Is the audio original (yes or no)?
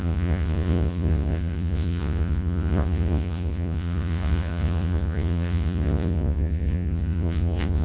no